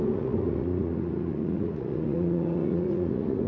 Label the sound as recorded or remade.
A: remade